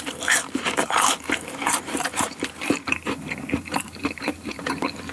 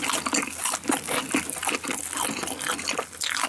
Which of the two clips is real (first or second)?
second